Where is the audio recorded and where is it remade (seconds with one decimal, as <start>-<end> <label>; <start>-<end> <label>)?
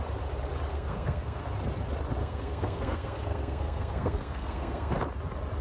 0.0-0.7 recorded; 0.7-1.4 remade; 1.4-2.2 recorded; 2.2-4.9 remade; 4.9-5.6 recorded